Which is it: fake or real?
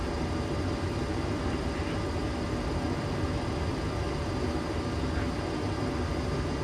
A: real